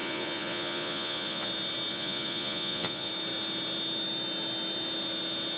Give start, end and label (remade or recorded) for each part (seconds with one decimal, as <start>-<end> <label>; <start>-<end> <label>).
0.0-1.5 remade; 1.5-1.9 recorded; 1.9-3.1 remade; 3.1-5.6 recorded